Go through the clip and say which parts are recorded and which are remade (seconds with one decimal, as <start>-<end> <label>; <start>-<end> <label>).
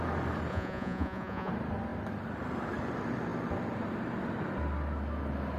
0.0-0.5 recorded; 0.5-1.5 remade; 1.5-5.6 recorded